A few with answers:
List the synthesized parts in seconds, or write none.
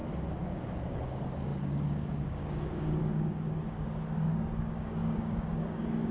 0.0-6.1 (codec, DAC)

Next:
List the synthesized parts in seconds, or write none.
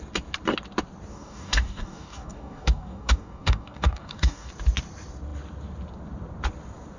1.1-4.5 (codec, DAC)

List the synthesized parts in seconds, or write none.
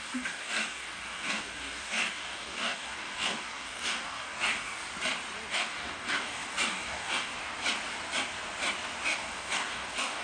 0.0-4.8 (codec, DAC); 5.5-7.3; 9.0-10.2